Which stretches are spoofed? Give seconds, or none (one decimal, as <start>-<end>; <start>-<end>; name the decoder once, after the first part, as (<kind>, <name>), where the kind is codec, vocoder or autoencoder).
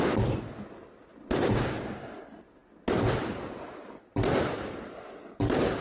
none